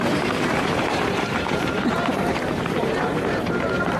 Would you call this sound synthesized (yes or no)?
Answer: yes